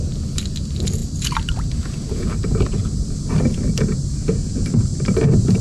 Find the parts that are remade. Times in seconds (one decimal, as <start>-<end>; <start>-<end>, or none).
none